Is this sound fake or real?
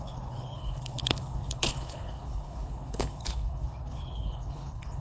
fake